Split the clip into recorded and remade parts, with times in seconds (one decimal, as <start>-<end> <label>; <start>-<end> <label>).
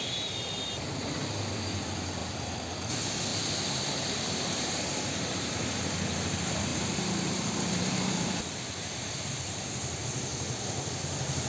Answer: 0.0-3.3 recorded; 3.3-5.5 remade; 5.5-6.7 recorded; 6.7-9.1 remade; 9.1-10.3 recorded; 10.3-10.9 remade; 10.9-11.5 recorded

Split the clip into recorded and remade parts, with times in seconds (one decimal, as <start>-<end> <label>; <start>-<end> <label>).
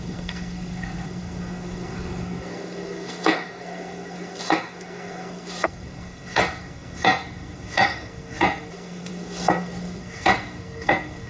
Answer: 0.0-11.3 remade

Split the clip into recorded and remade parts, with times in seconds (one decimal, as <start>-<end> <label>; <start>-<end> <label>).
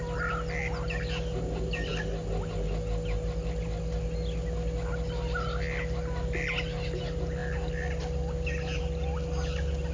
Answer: 0.0-9.9 recorded